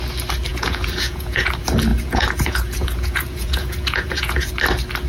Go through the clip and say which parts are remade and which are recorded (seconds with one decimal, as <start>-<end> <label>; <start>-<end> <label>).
0.0-0.5 recorded; 0.5-1.5 remade; 1.5-1.9 recorded; 1.9-4.5 remade; 4.5-5.1 recorded